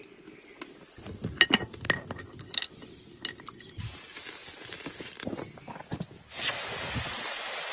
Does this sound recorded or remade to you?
recorded